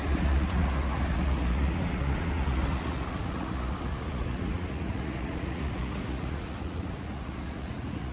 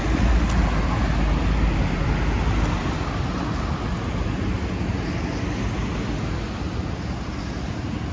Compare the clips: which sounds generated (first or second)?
first